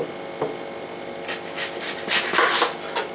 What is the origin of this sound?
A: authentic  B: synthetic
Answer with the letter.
A